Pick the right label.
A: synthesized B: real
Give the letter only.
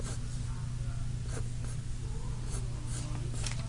B